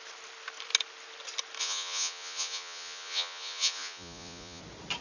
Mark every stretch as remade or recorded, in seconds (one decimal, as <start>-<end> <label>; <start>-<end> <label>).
0.0-1.6 recorded; 1.6-4.6 remade; 4.6-5.0 recorded